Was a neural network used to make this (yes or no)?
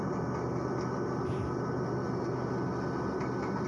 no